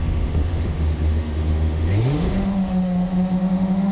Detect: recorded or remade remade